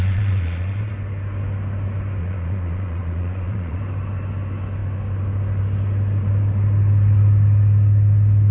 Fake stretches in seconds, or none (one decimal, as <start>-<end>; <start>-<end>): 0.0-0.9; 2.2-3.8